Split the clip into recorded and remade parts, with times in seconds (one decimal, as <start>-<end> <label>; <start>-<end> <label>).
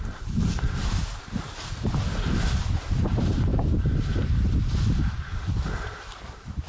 0.0-3.5 remade; 3.5-5.8 recorded; 5.8-6.7 remade